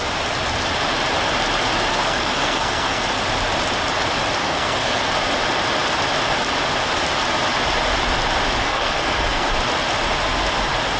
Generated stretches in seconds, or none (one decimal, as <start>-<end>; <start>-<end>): 1.9-3.0; 4.4-5.0; 8.6-9.5